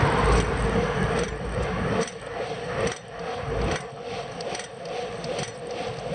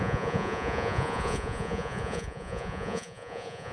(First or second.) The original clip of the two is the first